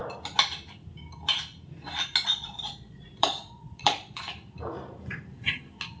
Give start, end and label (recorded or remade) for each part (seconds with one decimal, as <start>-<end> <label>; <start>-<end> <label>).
0.0-2.3 recorded; 2.3-4.2 remade; 4.2-6.0 recorded